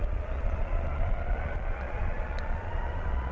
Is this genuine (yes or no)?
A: no